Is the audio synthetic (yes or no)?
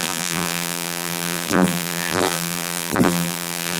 yes